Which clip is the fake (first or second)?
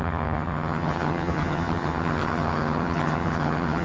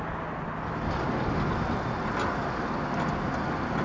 first